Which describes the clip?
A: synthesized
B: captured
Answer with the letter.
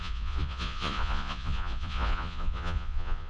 A